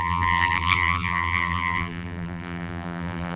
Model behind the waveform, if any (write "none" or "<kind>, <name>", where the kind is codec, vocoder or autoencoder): vocoder, BigVGAN v2